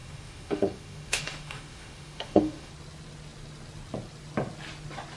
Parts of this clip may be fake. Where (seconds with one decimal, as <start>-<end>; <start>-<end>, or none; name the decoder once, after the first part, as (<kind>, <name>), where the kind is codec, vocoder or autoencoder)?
0.0-2.7 (autoencoder, DAC-VAE)